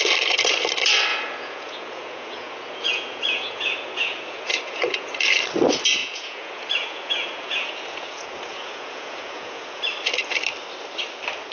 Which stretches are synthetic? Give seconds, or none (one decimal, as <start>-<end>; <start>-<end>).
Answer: 1.1-5.2; 6.0-9.8